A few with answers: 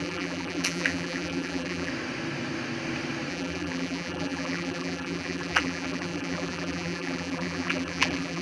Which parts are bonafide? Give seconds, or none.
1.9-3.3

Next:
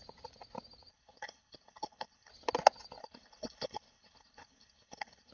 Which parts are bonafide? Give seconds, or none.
0.0-0.9; 2.3-3.0

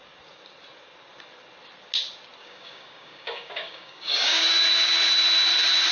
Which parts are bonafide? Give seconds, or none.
0.0-2.4; 4.6-5.9

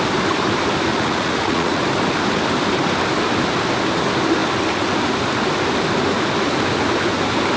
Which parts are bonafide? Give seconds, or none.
0.0-0.9; 1.8-7.6

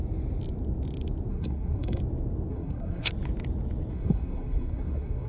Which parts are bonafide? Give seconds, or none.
0.0-1.3; 2.0-2.5; 3.1-3.9

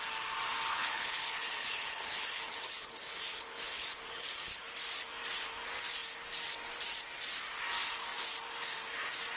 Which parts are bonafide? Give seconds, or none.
0.0-0.7; 4.6-9.4

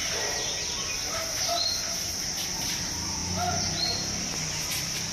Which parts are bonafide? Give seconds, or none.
0.0-5.1